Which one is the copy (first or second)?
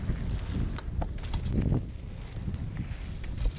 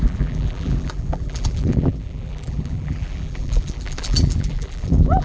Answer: second